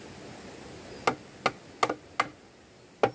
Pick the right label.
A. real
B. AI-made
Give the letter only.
A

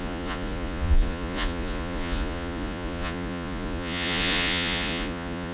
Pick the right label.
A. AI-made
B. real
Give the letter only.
A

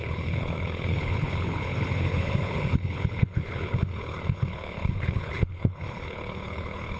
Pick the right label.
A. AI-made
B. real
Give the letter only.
A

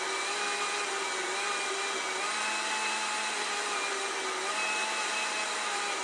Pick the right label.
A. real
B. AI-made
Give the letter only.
A